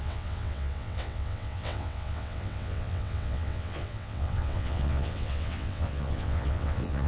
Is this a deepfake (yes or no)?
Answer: yes